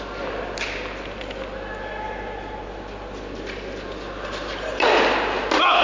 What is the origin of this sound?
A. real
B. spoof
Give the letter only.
A